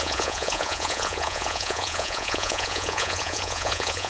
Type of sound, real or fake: fake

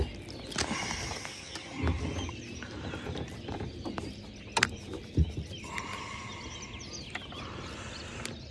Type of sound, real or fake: real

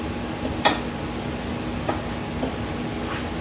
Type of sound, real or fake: real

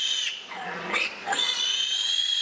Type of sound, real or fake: fake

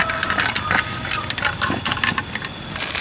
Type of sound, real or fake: real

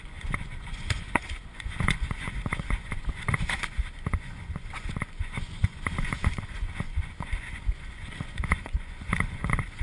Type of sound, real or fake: fake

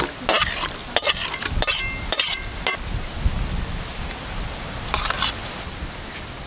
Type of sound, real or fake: real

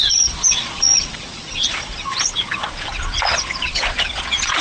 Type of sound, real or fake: fake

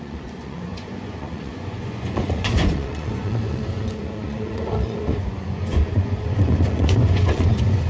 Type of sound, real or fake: fake